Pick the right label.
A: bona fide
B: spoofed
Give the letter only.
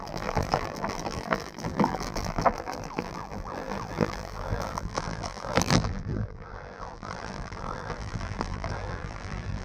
B